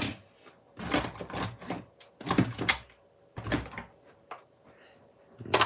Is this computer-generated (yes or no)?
no